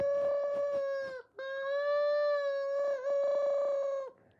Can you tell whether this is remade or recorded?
recorded